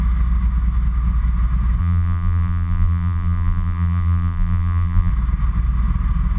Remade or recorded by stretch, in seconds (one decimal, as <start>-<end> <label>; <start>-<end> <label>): 0.0-1.8 recorded; 1.8-5.1 remade; 5.1-6.4 recorded